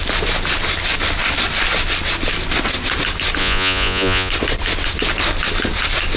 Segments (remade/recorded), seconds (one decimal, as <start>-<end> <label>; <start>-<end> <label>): 0.0-3.4 recorded; 3.4-4.3 remade; 4.3-6.2 recorded